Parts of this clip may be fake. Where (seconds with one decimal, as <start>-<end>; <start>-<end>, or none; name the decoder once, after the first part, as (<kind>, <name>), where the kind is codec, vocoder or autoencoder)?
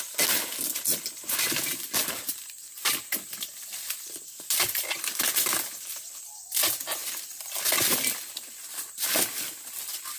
0.0-10.2 (vocoder, BigVGAN v2)